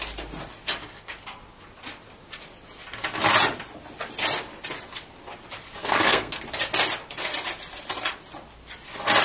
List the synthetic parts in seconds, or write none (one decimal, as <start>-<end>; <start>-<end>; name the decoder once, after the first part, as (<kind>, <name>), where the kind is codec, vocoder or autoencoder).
5.8-6.4 (codec, SNAC)